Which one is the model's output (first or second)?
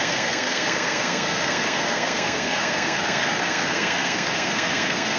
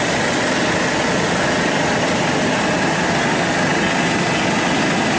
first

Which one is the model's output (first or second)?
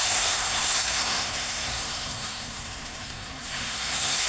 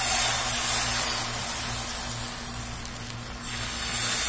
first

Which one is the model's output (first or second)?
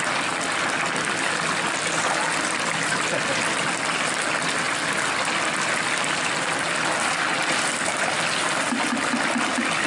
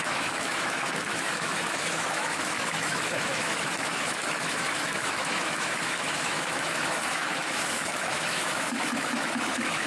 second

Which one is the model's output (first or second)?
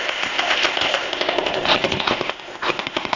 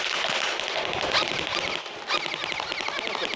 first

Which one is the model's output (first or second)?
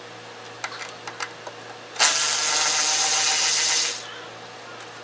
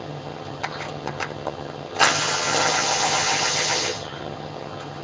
second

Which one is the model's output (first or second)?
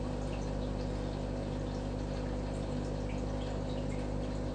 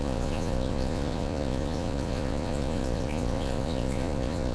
second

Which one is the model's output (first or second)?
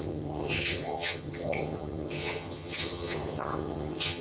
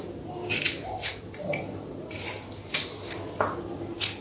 first